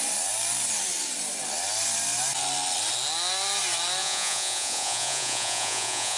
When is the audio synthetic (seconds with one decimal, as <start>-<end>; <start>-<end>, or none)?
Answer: 4.0-6.2